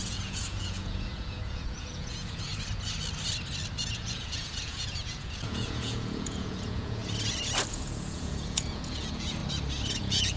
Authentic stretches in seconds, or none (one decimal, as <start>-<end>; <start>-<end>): 2.5-3.8; 7.0-7.7; 9.4-10.0